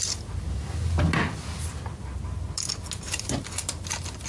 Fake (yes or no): no